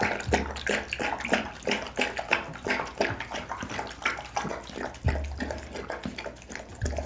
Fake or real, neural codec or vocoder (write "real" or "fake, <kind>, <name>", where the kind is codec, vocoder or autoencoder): real